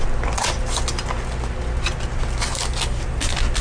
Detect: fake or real real